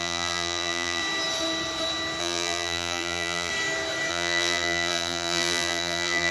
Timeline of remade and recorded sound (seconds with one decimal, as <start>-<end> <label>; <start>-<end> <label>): 0.0-1.0 remade; 1.0-2.2 recorded; 2.2-3.5 remade; 3.5-4.1 recorded; 4.1-6.3 remade